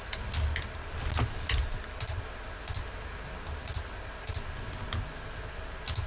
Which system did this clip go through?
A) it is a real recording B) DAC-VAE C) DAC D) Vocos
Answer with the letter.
A